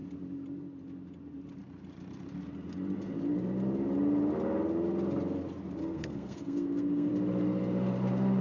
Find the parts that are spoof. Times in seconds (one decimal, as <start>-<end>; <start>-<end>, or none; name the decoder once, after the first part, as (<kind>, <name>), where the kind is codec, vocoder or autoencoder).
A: 5.8-7.1 (codec, SNAC)